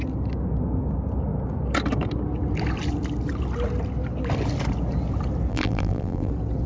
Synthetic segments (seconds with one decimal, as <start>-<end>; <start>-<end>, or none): 5.5-6.3